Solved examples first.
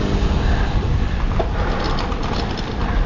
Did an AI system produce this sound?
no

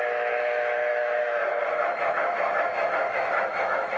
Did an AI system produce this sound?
yes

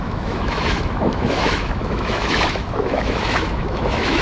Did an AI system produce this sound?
yes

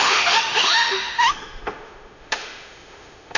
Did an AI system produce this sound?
yes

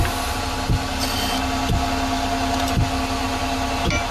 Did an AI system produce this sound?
no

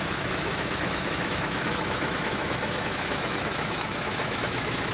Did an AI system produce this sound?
yes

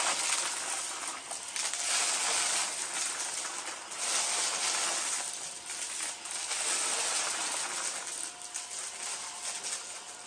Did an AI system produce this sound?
no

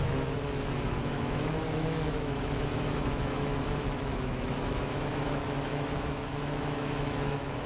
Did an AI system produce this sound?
yes